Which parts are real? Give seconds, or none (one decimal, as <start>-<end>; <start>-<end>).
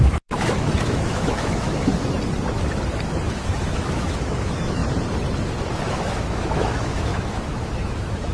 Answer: 1.9-3.3; 4.8-5.9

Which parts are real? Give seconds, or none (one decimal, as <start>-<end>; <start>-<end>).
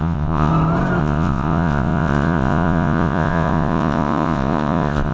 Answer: 0.5-1.0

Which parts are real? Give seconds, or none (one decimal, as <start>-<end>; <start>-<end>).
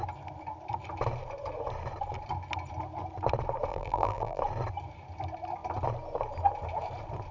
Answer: 0.0-3.7; 4.4-7.3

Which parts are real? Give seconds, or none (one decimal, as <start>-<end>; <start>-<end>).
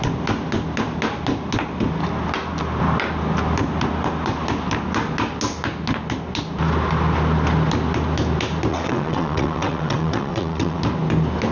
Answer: 0.0-8.7; 10.8-11.5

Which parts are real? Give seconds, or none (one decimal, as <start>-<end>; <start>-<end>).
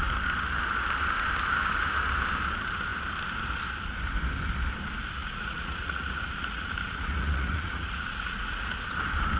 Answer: 0.0-5.2; 8.7-9.4